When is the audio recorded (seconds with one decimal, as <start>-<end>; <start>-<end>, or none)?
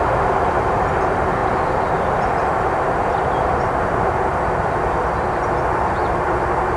0.0-1.4; 3.7-6.8